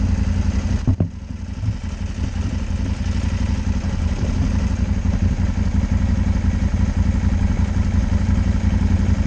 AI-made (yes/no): no